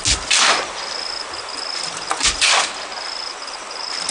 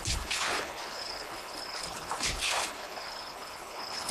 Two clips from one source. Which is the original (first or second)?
first